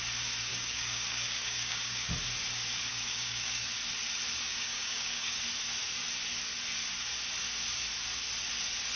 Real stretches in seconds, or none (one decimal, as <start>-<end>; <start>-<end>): 0.0-0.5; 2.1-2.9; 3.7-4.5; 5.4-9.0